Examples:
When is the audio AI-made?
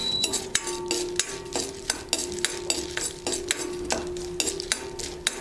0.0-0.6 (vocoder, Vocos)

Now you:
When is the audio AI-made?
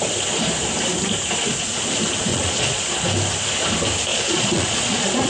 2.3-2.8 (vocoder, Vocos); 4.1-5.3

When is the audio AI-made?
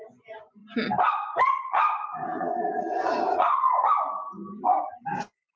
0.0-0.6 (vocoder, Vocos); 1.7-4.2